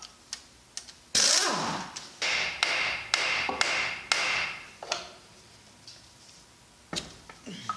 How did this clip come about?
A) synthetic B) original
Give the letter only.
B